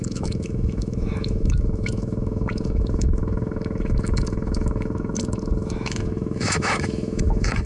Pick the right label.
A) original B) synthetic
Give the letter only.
B